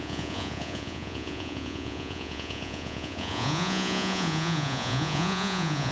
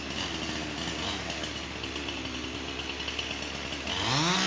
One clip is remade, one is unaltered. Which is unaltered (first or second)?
second